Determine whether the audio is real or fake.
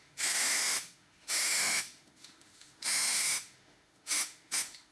fake